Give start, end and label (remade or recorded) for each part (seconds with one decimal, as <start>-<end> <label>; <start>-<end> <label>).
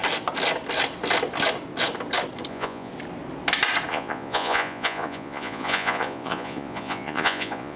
0.0-2.5 recorded; 2.5-2.9 remade; 2.9-3.9 recorded; 3.9-7.8 remade